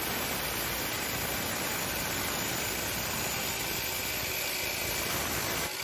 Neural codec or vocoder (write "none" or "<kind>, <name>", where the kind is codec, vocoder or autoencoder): none